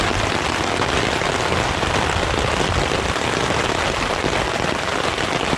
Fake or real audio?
real